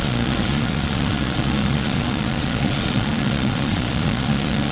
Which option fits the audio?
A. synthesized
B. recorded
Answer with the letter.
A